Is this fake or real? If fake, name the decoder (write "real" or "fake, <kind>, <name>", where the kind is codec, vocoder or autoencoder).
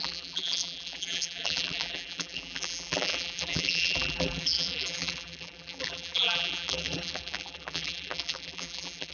fake, vocoder, BigVGAN v2